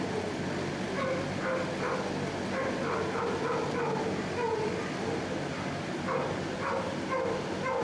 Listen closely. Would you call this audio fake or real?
real